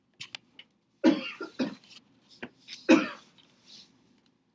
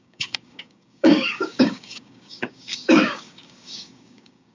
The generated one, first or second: second